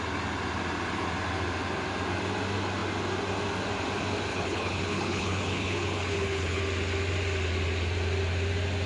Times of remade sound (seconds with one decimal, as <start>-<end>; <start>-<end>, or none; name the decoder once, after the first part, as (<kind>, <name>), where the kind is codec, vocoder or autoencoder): 4.3-6.6 (codec, HILCodec)